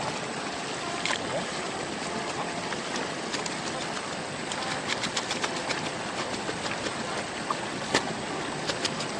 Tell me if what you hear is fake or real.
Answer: real